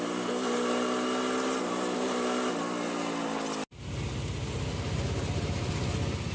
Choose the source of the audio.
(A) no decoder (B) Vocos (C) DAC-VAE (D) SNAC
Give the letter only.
A